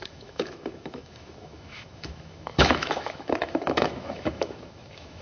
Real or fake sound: fake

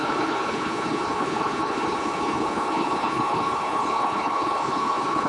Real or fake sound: fake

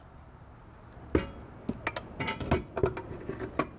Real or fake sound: real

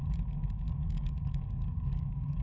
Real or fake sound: fake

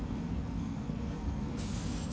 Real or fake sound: fake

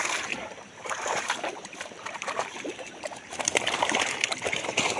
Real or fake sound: fake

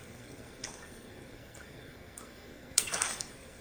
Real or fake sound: fake